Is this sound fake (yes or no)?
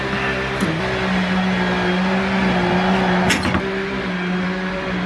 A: no